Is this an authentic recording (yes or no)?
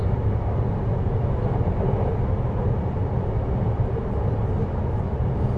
yes